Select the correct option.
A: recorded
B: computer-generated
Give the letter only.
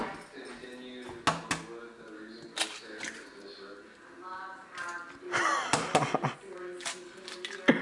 A